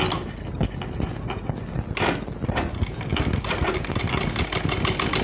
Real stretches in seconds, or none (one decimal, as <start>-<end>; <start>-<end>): 0.0-5.2